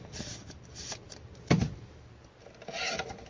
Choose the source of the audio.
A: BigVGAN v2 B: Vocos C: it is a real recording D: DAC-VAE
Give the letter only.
C